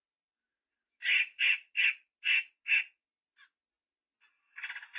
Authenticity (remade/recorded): recorded